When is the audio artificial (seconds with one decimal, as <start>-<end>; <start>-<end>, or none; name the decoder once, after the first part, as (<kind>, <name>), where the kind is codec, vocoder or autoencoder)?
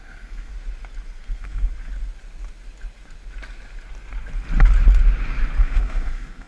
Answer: 0.0-0.5 (codec, SNAC); 1.2-1.7; 5.6-6.5